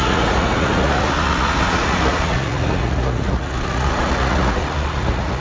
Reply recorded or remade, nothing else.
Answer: remade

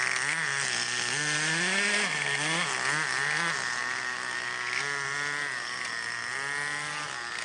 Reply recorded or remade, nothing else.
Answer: recorded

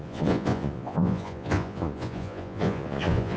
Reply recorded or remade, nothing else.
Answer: remade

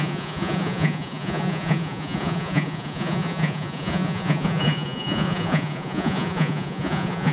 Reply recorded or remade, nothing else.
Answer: remade